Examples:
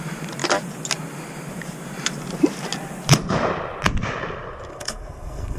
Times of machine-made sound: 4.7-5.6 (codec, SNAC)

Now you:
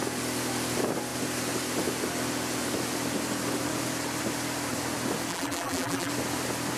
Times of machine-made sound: 5.3-6.1 (vocoder, BigVGAN v2)